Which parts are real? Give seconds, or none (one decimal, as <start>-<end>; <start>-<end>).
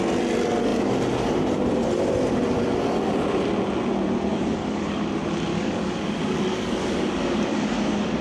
0.0-4.3; 5.1-5.5